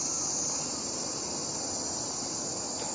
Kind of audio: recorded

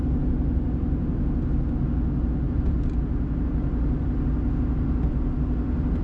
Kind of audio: recorded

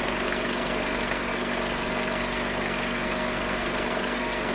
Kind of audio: remade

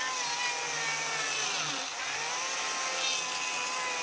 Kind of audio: recorded